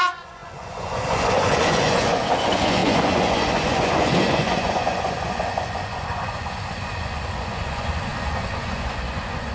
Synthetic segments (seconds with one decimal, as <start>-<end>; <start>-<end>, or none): 0.0-9.5